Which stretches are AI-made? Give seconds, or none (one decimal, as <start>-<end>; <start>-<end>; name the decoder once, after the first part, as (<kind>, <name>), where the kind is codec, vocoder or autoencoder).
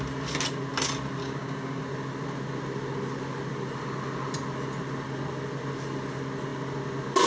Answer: 1.2-1.8 (codec, DAC)